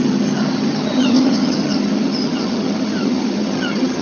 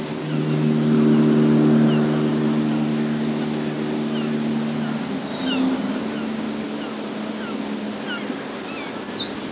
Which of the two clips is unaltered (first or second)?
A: second